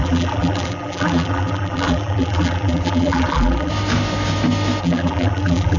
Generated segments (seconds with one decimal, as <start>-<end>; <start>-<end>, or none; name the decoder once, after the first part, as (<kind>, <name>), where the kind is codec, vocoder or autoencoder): 0.0-3.7 (vocoder, BigVGAN v2); 4.8-5.8